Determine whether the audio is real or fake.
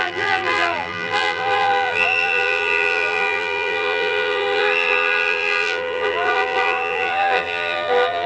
fake